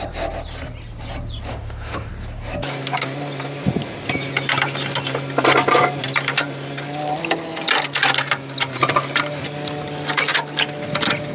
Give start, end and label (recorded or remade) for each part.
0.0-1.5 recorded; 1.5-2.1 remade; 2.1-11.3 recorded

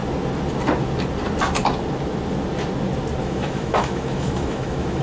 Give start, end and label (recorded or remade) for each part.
0.0-3.2 recorded; 3.2-5.0 remade

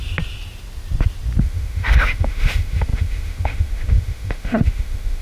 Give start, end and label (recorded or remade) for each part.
0.0-1.4 recorded; 1.4-5.2 remade